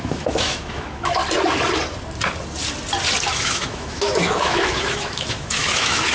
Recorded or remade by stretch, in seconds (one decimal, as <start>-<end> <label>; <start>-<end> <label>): 0.0-1.2 remade; 1.2-3.3 recorded; 3.3-6.1 remade